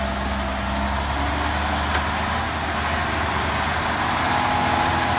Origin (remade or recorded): recorded